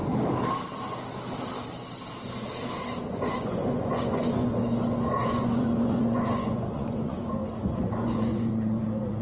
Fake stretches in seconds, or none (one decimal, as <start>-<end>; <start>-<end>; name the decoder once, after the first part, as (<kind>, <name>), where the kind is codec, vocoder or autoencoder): 3.1-4.6 (vocoder, Vocos); 5.1-9.2